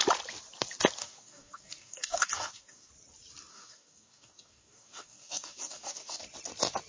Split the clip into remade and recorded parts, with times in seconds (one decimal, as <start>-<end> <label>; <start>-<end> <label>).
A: 0.0-1.0 recorded; 1.0-2.9 remade; 2.9-3.5 recorded; 3.5-6.2 remade; 6.2-6.9 recorded